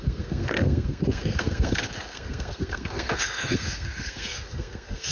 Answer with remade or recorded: remade